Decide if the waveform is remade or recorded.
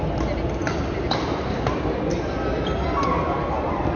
recorded